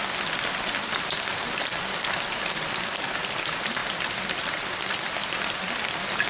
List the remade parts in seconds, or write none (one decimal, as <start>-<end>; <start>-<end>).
5.2-5.7